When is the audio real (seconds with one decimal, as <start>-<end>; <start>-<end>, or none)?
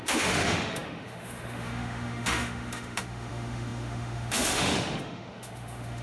none